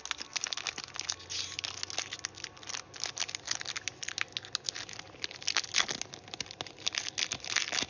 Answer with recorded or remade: recorded